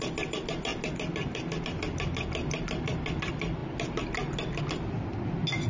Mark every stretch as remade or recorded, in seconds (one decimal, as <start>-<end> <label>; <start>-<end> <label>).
0.0-5.7 recorded